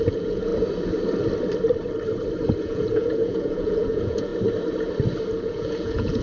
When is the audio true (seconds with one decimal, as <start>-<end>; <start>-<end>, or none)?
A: 0.5-2.6; 4.3-5.4